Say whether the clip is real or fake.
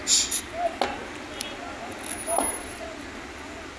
real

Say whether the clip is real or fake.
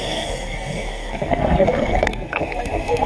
fake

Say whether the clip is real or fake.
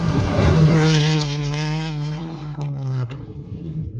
fake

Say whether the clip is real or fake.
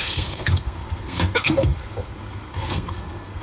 fake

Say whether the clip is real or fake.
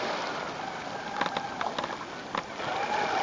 real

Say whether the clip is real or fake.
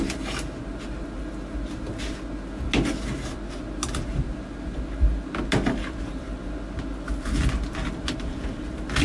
real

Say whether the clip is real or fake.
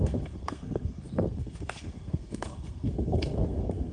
fake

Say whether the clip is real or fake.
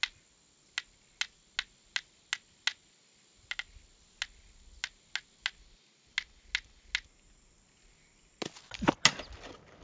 real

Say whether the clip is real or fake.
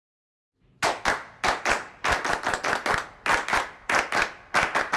real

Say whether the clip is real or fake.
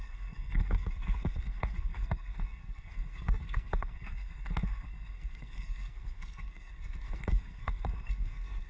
fake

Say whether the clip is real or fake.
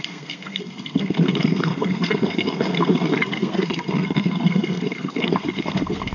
fake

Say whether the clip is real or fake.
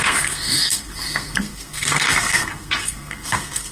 fake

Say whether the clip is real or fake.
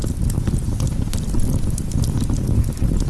real